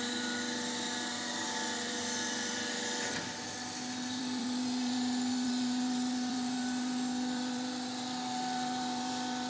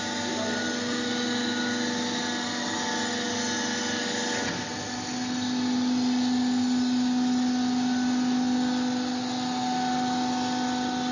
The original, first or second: second